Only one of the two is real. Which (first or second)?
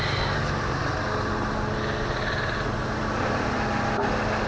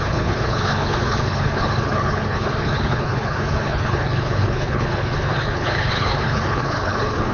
first